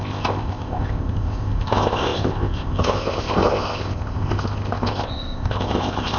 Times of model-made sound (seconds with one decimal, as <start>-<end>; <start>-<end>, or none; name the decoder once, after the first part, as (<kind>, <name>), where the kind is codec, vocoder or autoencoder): 0.0-6.2 (codec, ZipCodec)